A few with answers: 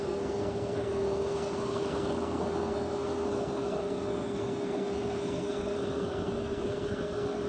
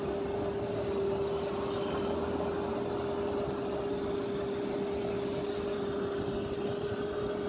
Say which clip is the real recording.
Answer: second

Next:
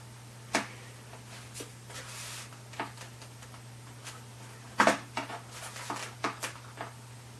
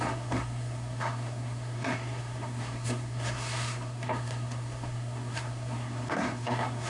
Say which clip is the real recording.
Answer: first